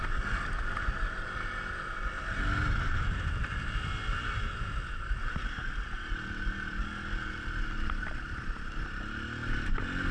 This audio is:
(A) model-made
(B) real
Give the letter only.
B